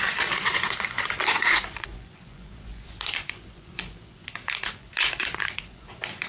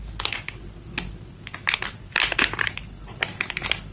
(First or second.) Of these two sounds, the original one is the second